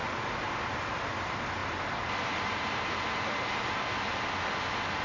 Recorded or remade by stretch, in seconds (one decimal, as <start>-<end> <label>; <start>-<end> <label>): 0.0-1.6 recorded; 1.6-3.7 remade; 3.7-5.0 recorded